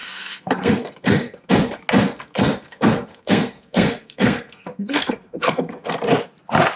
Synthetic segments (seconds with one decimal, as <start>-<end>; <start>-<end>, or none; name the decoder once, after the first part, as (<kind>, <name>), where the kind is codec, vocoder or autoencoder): 0.0-1.5 (codec, SNAC); 2.0-5.9